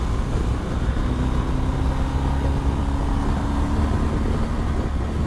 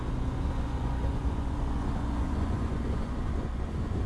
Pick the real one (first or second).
first